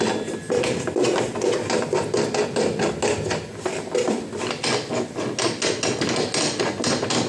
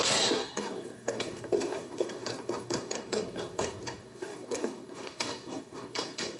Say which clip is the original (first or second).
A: first